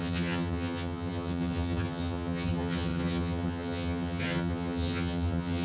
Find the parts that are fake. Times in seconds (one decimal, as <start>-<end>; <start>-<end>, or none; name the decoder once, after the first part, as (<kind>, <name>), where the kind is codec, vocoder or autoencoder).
0.0-5.6 (vocoder, HiFi-GAN)